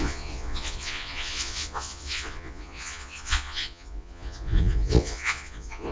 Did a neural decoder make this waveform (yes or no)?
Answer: yes